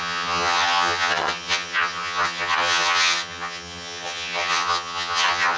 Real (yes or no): no